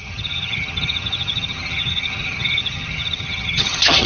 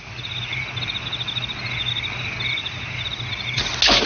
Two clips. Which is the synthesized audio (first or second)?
first